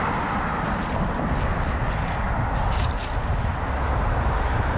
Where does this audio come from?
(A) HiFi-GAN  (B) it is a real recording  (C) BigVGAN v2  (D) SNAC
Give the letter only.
B